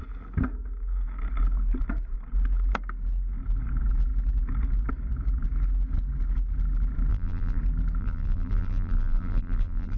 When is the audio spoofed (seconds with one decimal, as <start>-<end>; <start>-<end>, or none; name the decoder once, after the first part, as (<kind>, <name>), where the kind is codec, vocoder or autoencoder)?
7.1-7.6 (vocoder, BigVGAN v2); 8.0-10.0